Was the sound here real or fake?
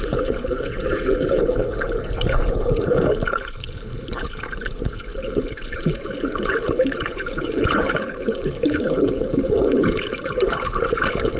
fake